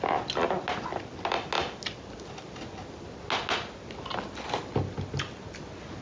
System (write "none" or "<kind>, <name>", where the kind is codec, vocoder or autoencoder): none